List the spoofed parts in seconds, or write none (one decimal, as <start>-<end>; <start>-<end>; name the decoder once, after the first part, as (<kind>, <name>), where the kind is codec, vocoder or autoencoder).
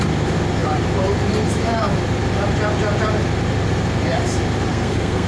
4.7-5.3 (codec, SNAC)